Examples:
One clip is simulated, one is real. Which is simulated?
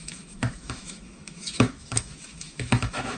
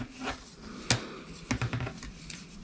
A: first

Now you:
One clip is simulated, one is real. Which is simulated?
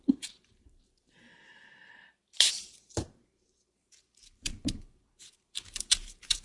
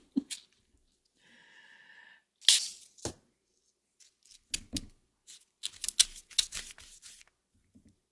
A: first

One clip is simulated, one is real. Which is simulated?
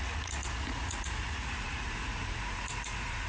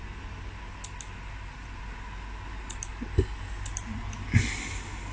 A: first